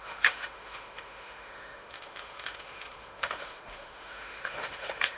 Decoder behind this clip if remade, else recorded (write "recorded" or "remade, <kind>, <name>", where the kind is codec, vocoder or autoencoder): remade, autoencoder, DAC-VAE